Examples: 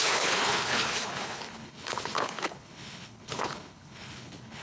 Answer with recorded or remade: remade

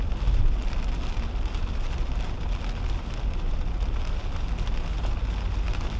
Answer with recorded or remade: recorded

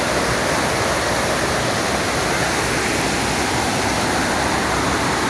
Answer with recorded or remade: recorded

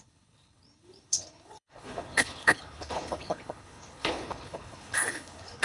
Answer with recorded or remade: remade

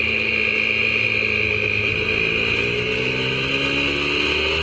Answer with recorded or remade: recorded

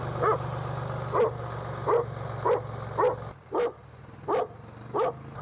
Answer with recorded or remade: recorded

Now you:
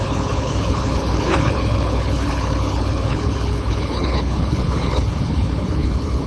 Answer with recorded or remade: remade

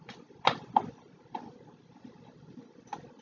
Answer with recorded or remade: recorded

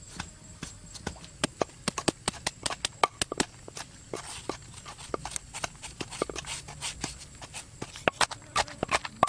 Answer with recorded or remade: recorded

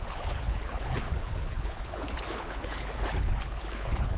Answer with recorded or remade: remade